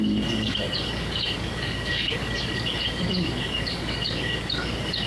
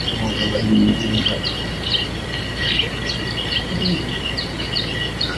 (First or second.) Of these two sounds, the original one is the second